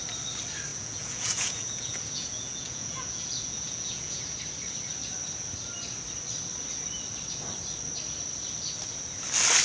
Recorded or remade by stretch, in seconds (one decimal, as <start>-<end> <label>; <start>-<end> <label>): 0.0-0.7 recorded; 0.7-4.2 remade; 4.2-9.6 recorded